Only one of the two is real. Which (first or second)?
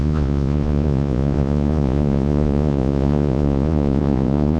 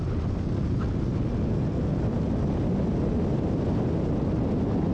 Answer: second